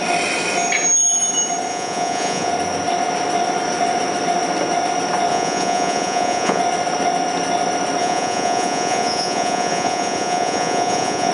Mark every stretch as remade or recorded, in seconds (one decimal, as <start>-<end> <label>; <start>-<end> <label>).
0.0-1.7 recorded; 1.7-2.5 remade; 2.5-5.3 recorded; 5.3-6.6 remade; 6.6-8.0 recorded; 8.0-11.3 remade